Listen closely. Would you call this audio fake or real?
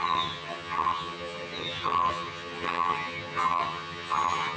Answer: fake